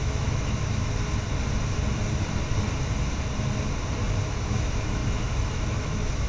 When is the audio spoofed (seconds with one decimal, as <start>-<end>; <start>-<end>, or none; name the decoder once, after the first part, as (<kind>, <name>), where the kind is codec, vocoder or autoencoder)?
0.0-0.9 (autoencoder, DAC-VAE); 4.2-6.3